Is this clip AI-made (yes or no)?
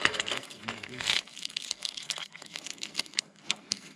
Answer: yes